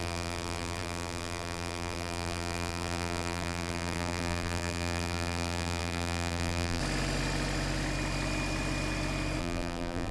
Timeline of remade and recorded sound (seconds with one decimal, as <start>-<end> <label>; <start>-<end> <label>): 0.0-6.8 remade; 6.8-9.4 recorded; 9.4-10.1 remade